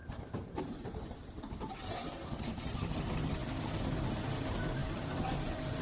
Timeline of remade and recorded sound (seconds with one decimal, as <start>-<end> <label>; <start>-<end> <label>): 0.0-3.4 remade; 3.4-4.1 recorded; 4.1-5.8 remade